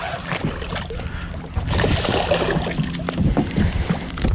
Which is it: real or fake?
real